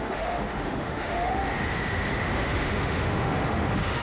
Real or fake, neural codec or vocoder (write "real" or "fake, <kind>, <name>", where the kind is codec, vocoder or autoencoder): fake, autoencoder, DAC-VAE